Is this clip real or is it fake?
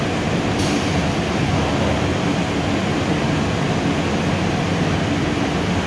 real